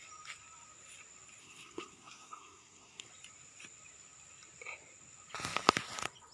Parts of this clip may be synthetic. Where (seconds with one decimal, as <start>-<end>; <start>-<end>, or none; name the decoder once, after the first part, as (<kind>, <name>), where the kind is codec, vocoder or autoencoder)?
1.4-3.1 (codec, SNAC)